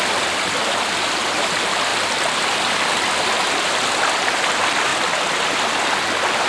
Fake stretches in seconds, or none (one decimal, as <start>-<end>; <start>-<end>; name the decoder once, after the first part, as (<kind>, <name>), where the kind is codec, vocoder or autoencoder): none